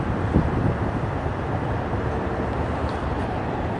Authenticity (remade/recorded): recorded